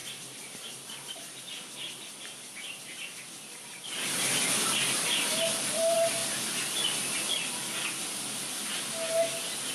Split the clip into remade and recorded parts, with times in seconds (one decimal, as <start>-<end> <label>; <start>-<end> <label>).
0.0-1.4 remade; 1.4-9.7 recorded